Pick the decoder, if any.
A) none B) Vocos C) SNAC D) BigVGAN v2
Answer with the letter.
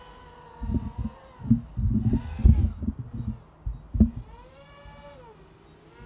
A